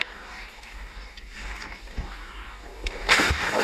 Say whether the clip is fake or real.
fake